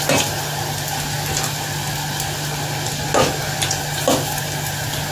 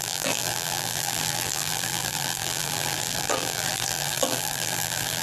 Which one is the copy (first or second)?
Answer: second